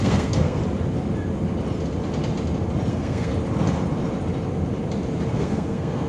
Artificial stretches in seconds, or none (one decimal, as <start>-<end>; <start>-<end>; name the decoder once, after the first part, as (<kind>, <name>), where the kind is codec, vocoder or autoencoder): 0.0-0.6 (codec, SNAC); 2.9-3.3; 5.3-6.1